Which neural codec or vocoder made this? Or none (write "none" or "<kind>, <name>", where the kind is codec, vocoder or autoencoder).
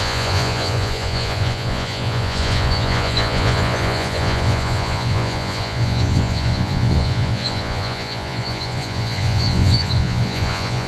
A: vocoder, Vocos